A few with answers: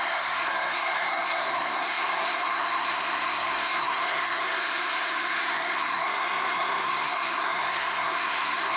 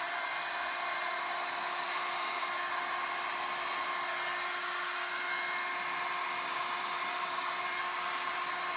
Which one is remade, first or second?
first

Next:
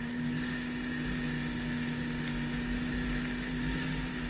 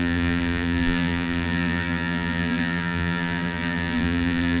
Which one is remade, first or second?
second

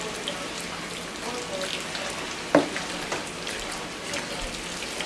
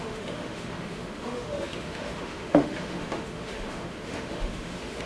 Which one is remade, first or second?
second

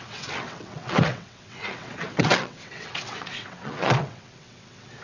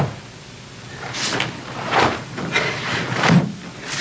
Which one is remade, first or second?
first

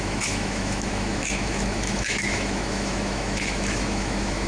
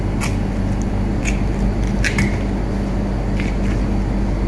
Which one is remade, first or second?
first